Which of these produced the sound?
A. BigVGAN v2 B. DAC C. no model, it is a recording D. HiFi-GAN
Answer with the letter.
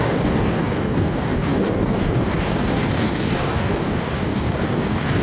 B